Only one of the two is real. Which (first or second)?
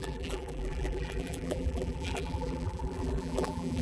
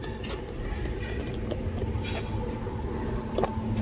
second